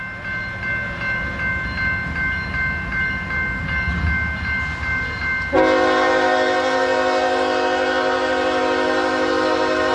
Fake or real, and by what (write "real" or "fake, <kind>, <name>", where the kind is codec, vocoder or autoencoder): real